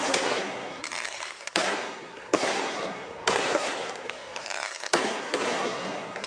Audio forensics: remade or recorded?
remade